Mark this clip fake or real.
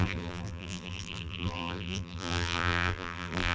fake